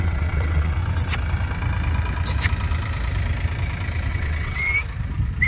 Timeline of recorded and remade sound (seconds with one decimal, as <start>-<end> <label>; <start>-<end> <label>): 0.0-0.8 remade; 0.8-4.1 recorded; 4.1-4.7 remade; 4.7-5.5 recorded